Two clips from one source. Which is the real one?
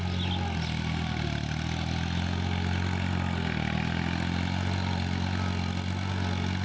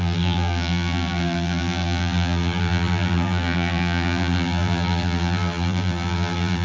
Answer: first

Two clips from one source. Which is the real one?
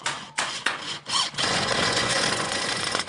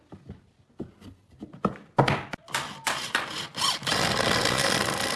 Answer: second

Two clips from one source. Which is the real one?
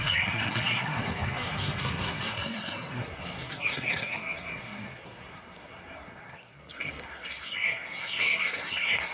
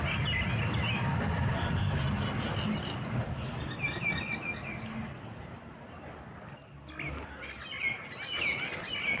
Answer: second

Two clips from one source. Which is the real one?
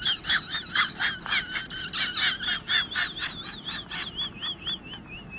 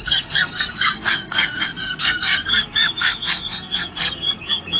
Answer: first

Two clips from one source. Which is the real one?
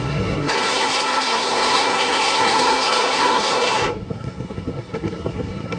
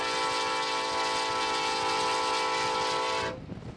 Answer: second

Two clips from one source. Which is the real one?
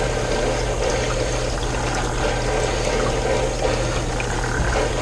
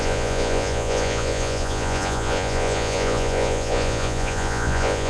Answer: first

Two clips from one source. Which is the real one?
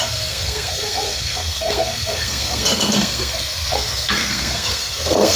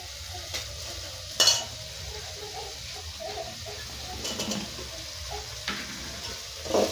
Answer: second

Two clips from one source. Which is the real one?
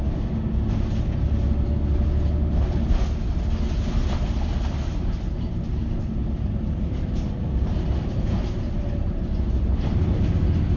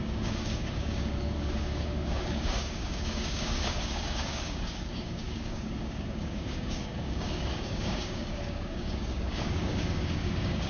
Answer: first